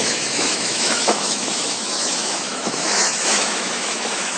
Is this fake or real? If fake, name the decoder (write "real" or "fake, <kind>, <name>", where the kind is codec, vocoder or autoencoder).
fake, autoencoder, DAC-VAE